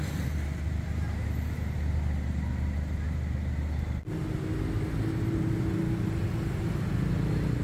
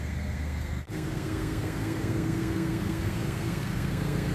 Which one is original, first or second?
first